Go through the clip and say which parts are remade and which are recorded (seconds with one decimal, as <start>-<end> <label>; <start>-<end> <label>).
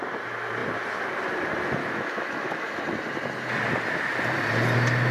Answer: 0.0-1.8 recorded; 1.8-2.8 remade; 2.8-5.1 recorded